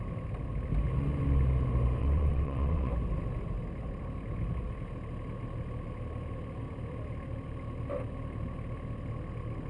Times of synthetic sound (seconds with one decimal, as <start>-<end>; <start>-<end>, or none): 2.0-2.9